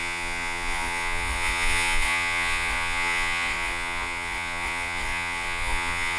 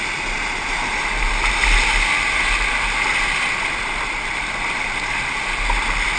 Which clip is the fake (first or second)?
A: first